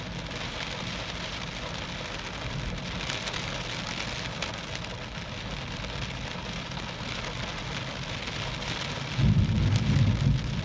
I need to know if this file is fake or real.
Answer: real